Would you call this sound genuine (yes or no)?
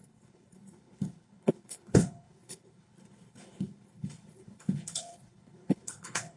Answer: no